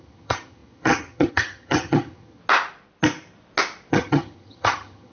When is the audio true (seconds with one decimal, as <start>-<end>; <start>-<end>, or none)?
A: 2.4-3.9